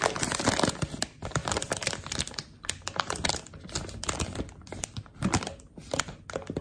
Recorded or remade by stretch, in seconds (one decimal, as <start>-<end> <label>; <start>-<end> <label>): 0.0-1.4 recorded; 1.4-5.4 remade; 5.4-6.6 recorded